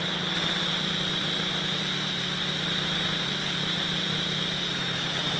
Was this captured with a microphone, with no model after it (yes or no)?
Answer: no